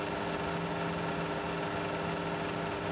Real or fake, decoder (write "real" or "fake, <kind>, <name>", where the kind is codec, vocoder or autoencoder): real